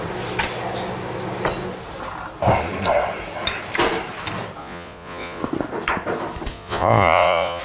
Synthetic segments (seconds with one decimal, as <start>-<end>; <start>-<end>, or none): 4.6-5.4; 6.5-7.6